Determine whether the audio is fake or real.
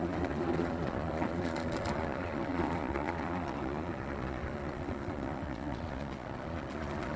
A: fake